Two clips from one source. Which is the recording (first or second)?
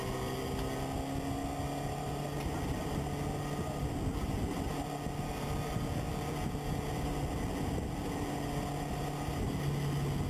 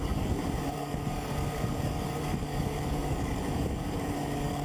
first